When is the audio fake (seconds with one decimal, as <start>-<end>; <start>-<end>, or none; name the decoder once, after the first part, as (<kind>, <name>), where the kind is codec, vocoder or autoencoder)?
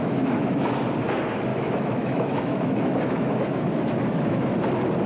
0.0-0.7 (autoencoder, DAC-VAE); 1.5-4.4